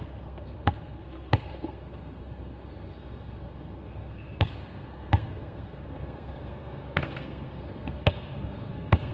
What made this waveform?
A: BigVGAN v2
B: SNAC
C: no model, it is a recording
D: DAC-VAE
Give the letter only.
B